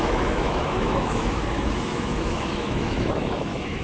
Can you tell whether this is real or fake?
fake